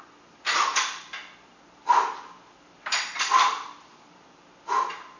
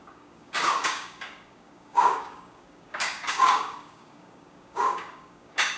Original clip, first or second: first